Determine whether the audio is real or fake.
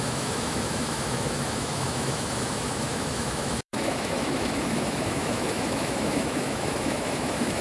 fake